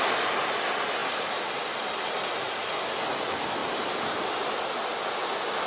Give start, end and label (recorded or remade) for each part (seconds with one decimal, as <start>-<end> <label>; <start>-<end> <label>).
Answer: 0.0-3.6 recorded; 3.6-4.6 remade; 4.6-5.7 recorded